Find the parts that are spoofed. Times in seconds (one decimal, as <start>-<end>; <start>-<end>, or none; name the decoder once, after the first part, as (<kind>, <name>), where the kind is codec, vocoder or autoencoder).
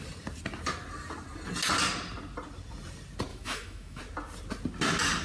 3.3-4.0 (autoencoder, DAC-VAE)